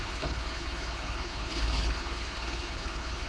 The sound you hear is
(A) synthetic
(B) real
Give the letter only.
A